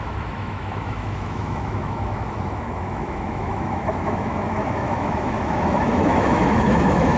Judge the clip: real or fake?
fake